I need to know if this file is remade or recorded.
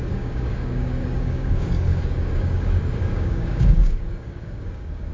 remade